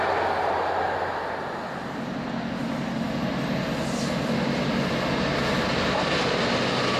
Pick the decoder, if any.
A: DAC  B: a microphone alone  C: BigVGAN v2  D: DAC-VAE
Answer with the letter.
B